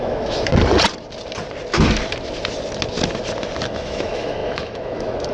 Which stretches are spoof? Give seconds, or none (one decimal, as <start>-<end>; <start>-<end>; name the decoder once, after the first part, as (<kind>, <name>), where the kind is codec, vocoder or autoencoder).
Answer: 0.0-0.5 (autoencoder, DAC-VAE); 3.7-5.3